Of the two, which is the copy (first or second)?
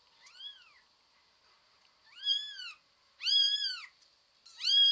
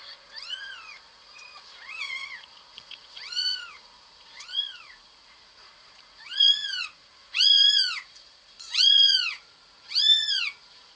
second